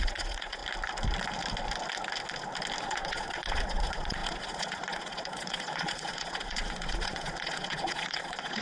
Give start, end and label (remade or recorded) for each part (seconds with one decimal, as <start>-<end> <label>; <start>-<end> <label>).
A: 0.0-0.6 remade; 0.6-2.8 recorded; 2.8-8.6 remade